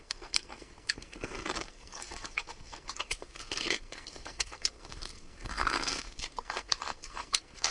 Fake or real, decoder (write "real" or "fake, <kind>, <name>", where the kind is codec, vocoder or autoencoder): fake, codec, SNAC